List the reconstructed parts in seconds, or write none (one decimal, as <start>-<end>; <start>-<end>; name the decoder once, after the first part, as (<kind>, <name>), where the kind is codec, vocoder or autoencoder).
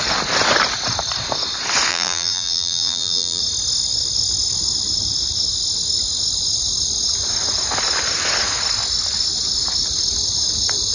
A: 1.9-3.4 (vocoder, BigVGAN v2)